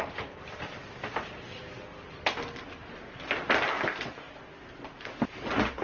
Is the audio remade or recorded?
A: recorded